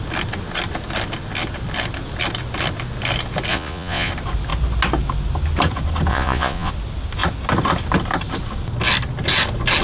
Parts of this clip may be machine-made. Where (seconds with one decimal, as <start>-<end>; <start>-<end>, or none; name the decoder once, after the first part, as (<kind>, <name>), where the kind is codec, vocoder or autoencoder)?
3.5-4.1 (vocoder, Vocos); 6.1-6.7